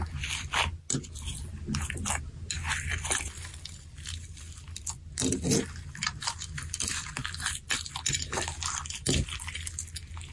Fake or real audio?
real